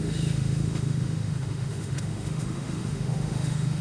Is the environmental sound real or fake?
fake